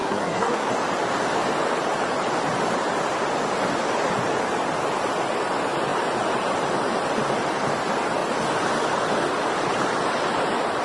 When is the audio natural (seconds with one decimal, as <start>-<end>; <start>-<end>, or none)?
0.7-10.8